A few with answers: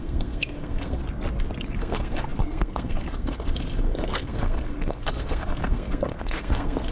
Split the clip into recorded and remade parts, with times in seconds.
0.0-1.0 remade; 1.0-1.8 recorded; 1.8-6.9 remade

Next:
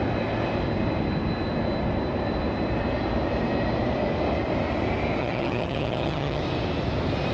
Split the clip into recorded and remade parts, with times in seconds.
0.0-5.2 recorded; 5.2-6.4 remade; 6.4-7.3 recorded

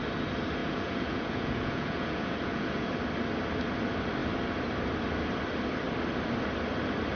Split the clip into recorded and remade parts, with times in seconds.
0.0-0.6 recorded; 0.6-2.9 remade; 2.9-7.2 recorded

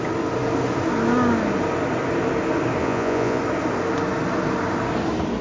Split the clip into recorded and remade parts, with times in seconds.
0.0-2.8 recorded; 2.8-3.4 remade; 3.4-5.4 recorded

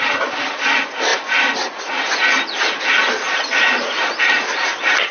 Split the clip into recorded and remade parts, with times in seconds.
0.0-5.1 recorded

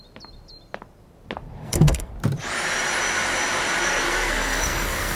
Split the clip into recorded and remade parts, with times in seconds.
0.0-1.6 recorded; 1.6-2.1 remade; 2.1-3.8 recorded; 3.8-5.2 remade